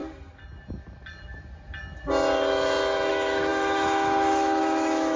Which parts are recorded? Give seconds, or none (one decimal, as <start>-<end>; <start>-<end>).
0.0-3.1